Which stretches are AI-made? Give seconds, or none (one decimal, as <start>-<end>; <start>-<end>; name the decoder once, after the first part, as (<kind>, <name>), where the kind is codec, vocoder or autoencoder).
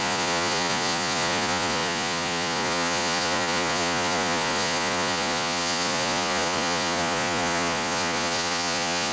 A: 0.0-9.1 (vocoder, Vocos)